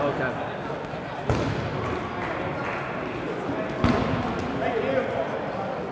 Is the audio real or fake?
real